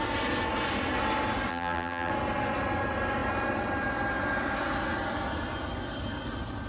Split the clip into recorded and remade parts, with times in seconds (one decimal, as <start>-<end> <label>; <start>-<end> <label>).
0.0-1.5 recorded; 1.5-2.1 remade; 2.1-6.7 recorded